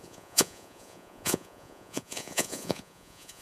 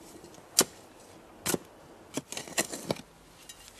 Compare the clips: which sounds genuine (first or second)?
second